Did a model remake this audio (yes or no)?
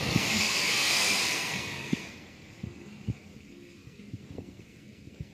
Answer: yes